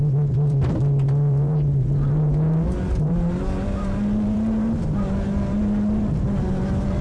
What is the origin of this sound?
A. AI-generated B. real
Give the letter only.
A